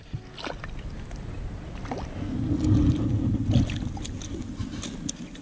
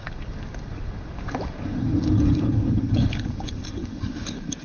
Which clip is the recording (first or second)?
first